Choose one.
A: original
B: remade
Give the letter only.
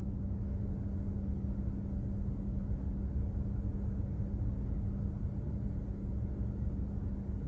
A